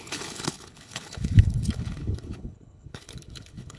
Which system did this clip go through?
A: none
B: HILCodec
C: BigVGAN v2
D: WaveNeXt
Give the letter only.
B